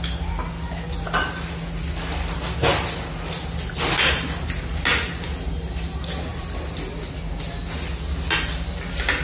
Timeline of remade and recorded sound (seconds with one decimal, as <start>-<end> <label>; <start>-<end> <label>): 0.0-6.3 recorded; 6.3-7.0 remade; 7.0-9.2 recorded